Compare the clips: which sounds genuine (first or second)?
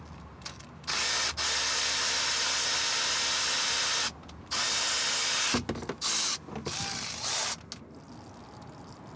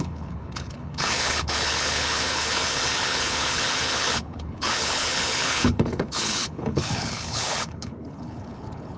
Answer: first